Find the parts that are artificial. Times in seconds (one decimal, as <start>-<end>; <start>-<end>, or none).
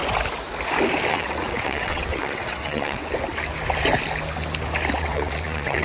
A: 1.1-3.0; 4.9-5.8